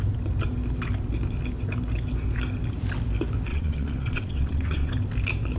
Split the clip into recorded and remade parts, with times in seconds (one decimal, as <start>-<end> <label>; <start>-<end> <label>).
0.0-3.5 recorded; 3.5-4.9 remade; 4.9-5.6 recorded